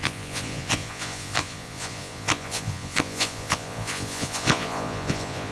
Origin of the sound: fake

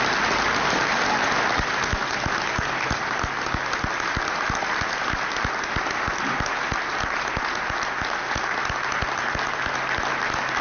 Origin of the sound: real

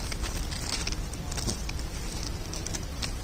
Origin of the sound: real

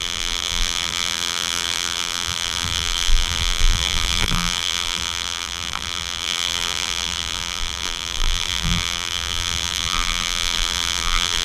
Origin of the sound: fake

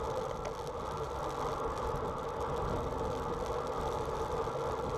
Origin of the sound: real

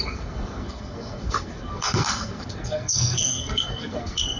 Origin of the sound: fake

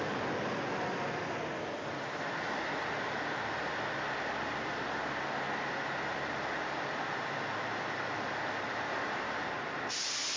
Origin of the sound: real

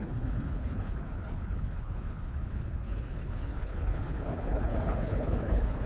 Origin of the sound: fake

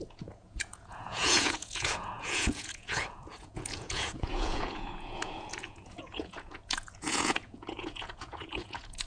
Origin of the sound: fake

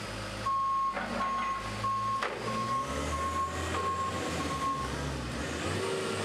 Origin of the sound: real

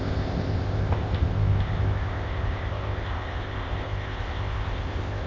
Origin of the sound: fake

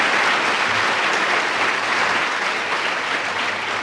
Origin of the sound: fake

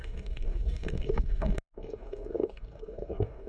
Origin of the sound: fake